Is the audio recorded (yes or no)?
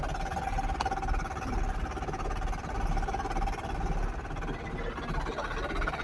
yes